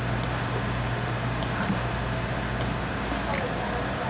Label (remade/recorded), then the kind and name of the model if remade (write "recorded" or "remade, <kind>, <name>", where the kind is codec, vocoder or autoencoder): recorded